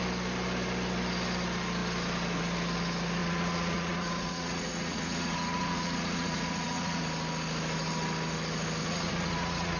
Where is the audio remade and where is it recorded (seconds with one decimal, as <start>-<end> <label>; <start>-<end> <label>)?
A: 0.0-3.2 recorded; 3.2-7.0 remade; 7.0-8.8 recorded; 8.8-9.8 remade